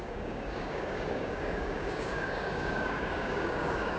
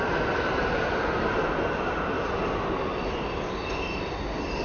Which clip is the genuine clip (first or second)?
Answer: second